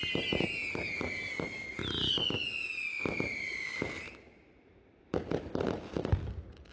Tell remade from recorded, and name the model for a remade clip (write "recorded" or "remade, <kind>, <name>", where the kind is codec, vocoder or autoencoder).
recorded